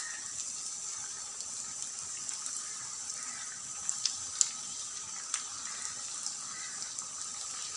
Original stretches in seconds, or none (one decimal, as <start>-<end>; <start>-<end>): 0.0-7.8